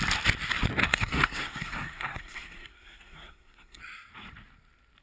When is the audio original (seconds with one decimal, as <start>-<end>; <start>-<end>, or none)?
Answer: 0.0-0.8; 3.8-5.0